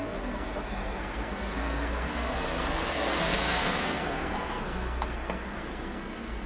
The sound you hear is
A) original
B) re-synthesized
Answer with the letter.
B